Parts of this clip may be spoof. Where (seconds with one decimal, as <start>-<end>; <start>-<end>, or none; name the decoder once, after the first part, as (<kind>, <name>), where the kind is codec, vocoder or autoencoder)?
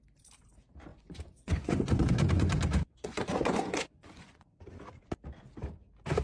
0.9-4.6 (vocoder, Vocos)